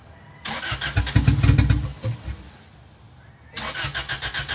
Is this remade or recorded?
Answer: recorded